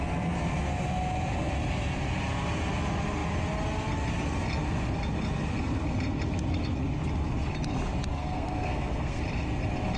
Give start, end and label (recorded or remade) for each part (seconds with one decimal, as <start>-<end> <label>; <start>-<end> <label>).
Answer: 0.0-8.2 recorded; 8.2-9.2 remade; 9.2-10.0 recorded